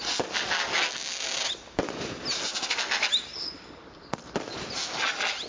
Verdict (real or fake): real